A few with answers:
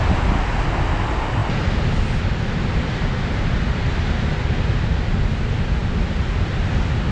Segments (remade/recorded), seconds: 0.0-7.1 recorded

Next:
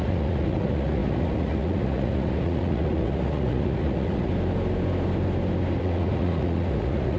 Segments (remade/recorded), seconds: 0.0-4.3 remade; 4.3-5.8 recorded; 5.8-7.2 remade

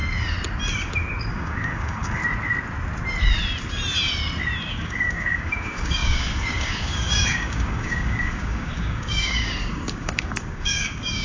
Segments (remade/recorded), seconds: 0.0-1.3 recorded; 1.3-2.2 remade; 2.2-4.7 recorded; 4.7-11.2 remade

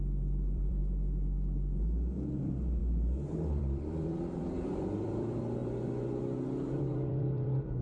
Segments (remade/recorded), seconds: 0.0-0.8 remade; 0.8-2.4 recorded; 2.4-2.8 remade; 2.8-3.6 recorded; 3.6-5.6 remade; 5.6-6.7 recorded; 6.7-7.8 remade

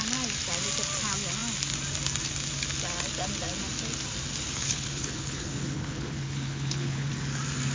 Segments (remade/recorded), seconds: 0.0-4.6 recorded; 4.6-7.1 remade; 7.1-7.7 recorded

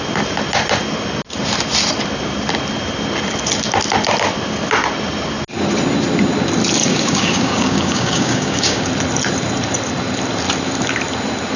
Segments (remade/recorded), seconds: 0.0-6.8 recorded; 6.8-8.9 remade; 8.9-11.6 recorded

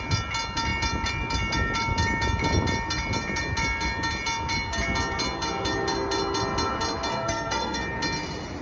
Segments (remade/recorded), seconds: 0.0-7.1 recorded; 7.1-7.8 remade; 7.8-8.6 recorded

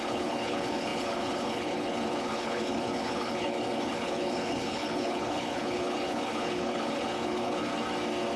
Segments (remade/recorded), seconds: 0.0-7.7 remade; 7.7-8.4 recorded